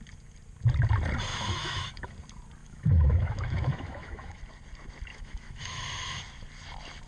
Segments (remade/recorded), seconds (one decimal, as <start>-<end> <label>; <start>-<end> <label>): 0.0-1.3 recorded; 1.3-2.1 remade; 2.1-2.6 recorded; 2.6-4.4 remade; 4.4-5.1 recorded; 5.1-5.8 remade; 5.8-7.1 recorded